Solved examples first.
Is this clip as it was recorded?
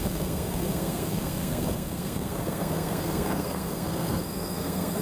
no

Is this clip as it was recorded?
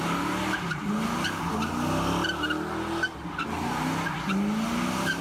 yes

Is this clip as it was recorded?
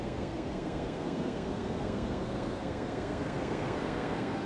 no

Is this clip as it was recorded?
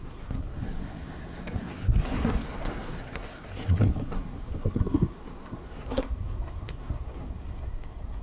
no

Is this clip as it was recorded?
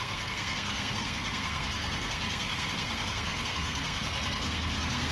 no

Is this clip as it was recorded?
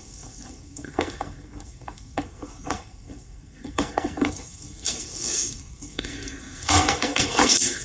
no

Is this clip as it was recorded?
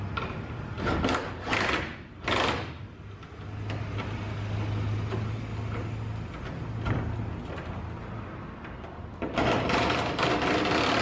yes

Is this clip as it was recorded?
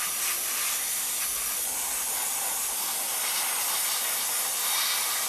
yes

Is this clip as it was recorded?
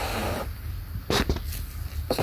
yes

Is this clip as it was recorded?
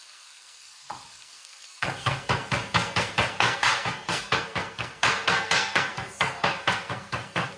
no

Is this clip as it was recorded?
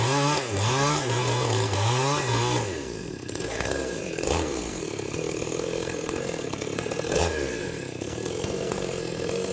no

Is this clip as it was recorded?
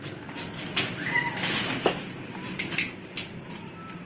yes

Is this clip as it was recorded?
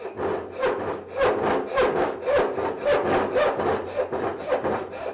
yes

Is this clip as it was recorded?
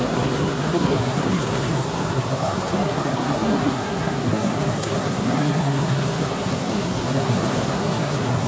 no